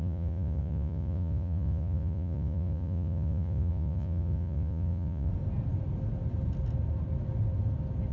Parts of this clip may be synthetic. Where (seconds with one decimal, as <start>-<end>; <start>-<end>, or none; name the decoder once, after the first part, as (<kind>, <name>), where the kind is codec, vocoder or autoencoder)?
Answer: 0.0-5.3 (vocoder, Vocos)